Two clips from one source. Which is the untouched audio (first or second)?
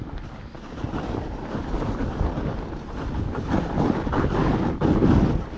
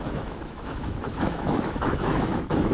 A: first